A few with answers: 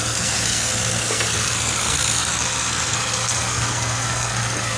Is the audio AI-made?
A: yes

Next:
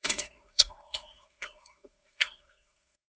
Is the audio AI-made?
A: yes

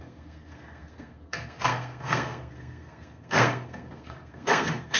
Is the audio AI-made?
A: yes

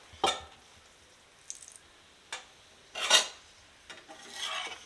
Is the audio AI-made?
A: no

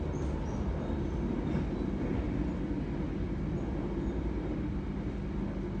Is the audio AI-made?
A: no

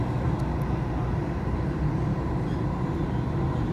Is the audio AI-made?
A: no